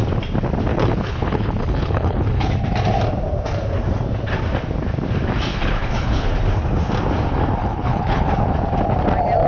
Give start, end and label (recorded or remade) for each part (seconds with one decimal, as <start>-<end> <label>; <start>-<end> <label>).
0.0-0.7 recorded; 0.7-2.5 remade; 2.5-5.5 recorded; 5.5-6.3 remade; 6.3-7.6 recorded; 7.6-8.3 remade; 8.3-9.5 recorded